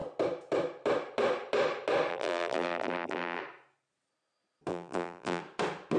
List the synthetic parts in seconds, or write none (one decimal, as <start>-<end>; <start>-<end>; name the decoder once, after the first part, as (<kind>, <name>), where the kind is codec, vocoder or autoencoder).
2.1-3.4 (vocoder, BigVGAN v2); 4.7-5.4